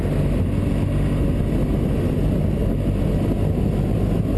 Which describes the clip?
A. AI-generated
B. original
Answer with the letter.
B